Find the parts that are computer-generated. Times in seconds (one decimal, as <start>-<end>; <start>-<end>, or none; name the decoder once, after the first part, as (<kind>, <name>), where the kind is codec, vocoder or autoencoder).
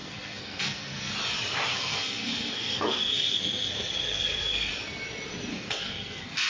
0.0-1.1 (codec, SNAC); 1.7-4.7; 5.5-6.5